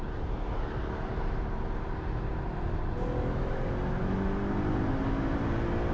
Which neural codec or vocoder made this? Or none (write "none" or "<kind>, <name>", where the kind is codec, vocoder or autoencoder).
none